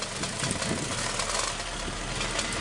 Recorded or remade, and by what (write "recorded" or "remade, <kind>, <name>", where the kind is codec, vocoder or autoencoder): recorded